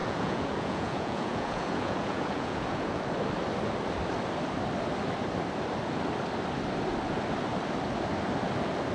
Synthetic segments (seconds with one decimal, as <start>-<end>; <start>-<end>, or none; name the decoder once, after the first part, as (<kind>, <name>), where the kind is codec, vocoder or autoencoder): 0.0-3.0 (vocoder, Vocos)